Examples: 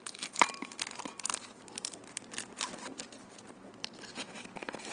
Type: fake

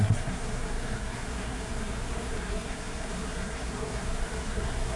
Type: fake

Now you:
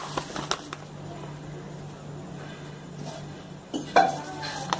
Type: real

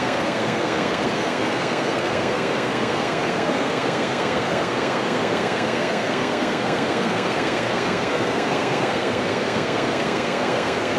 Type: fake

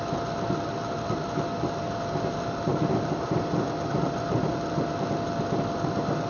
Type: real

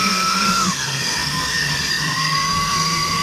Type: fake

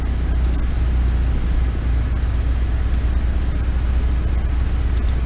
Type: real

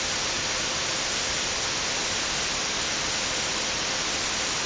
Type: real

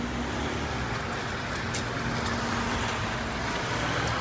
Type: real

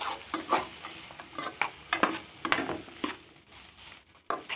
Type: real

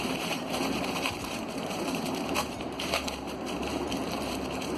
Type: fake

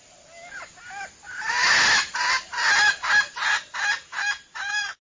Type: real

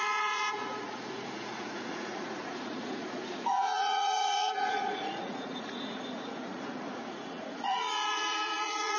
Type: fake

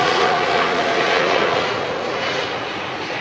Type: fake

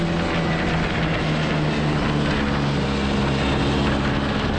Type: real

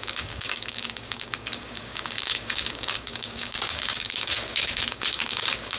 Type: fake